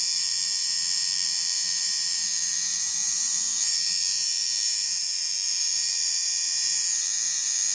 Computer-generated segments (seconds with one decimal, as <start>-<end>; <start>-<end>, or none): 0.0-7.7